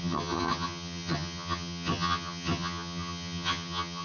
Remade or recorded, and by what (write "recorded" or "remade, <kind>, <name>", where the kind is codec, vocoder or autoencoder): remade, vocoder, HiFi-GAN